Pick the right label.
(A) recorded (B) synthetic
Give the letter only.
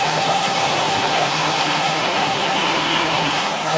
B